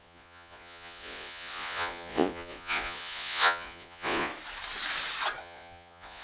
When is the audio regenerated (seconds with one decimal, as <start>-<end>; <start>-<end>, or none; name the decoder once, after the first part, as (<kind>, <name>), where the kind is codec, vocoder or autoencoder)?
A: 0.0-4.3 (vocoder, Vocos); 5.4-6.2